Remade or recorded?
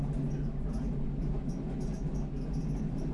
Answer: recorded